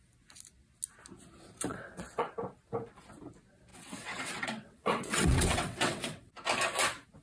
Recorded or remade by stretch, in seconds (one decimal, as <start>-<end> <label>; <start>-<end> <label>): 0.0-1.7 recorded; 1.7-2.3 remade; 2.3-3.7 recorded; 3.7-6.3 remade; 6.3-7.2 recorded